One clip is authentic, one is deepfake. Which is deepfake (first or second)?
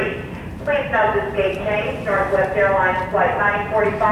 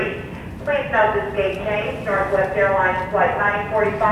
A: first